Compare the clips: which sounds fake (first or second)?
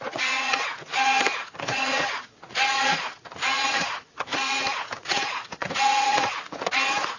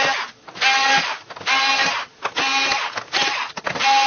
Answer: first